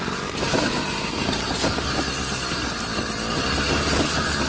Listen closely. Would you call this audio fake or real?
real